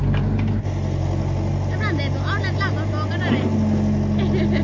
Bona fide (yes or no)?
yes